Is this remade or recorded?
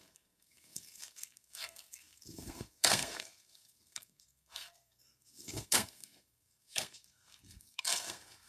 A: remade